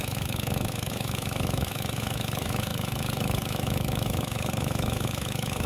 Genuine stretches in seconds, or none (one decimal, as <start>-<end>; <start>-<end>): none